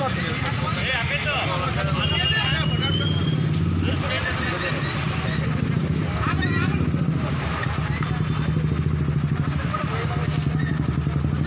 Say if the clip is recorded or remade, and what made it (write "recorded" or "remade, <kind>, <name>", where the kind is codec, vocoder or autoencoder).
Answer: recorded